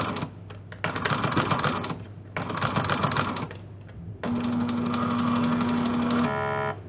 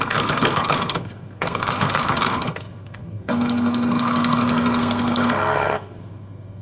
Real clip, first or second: first